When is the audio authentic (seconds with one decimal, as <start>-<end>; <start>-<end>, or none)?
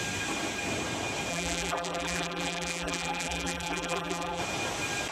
0.0-1.3; 4.4-5.1